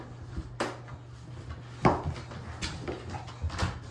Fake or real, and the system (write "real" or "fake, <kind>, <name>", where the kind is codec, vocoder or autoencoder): real